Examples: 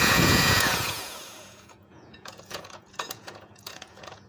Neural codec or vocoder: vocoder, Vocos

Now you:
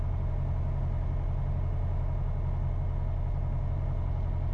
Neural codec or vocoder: none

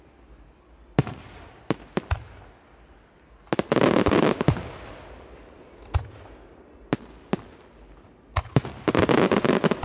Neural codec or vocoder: none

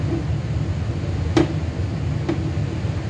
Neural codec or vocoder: none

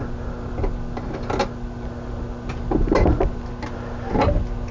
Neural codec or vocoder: none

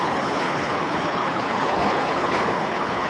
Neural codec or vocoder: codec, HILCodec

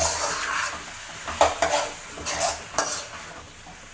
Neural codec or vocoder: none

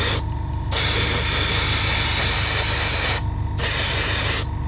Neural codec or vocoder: none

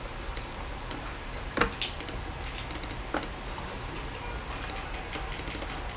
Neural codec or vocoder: none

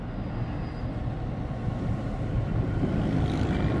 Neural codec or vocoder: none